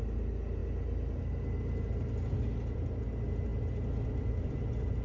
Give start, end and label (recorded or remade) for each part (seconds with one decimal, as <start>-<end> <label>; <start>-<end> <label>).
0.0-5.0 recorded